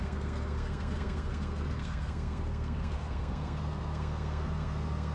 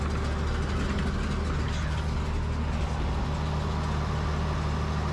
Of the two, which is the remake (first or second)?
first